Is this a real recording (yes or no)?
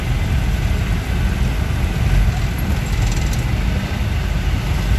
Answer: yes